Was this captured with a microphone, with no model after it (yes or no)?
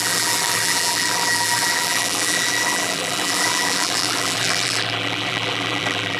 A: no